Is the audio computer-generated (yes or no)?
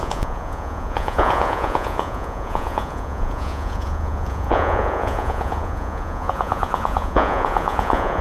yes